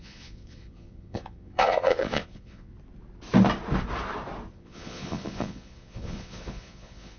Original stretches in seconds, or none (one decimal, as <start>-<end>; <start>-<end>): 2.7-4.5

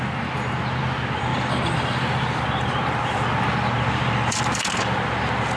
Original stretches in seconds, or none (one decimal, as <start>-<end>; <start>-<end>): none

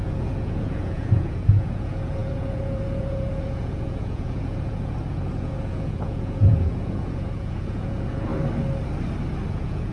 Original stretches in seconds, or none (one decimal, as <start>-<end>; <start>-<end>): 8.3-9.5

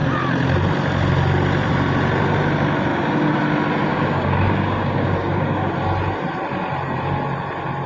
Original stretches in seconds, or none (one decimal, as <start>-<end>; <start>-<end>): 0.0-2.9; 3.4-3.9; 5.7-7.9